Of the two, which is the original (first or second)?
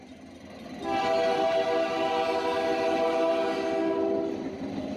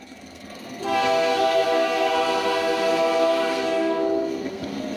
first